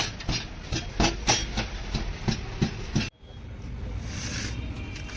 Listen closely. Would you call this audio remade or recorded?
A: recorded